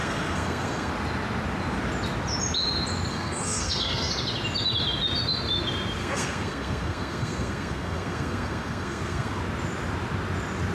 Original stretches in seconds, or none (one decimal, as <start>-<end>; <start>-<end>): 0.9-3.1; 4.1-6.0; 9.4-10.7